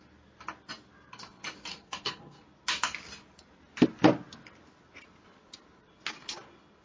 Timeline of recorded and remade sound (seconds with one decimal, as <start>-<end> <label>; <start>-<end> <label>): 0.0-1.7 recorded; 1.7-2.4 remade; 2.4-6.8 recorded